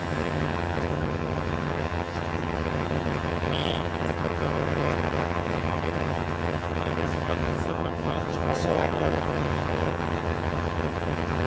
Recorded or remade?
remade